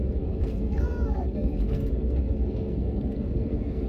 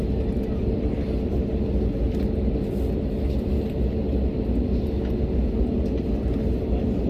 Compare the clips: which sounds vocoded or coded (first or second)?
first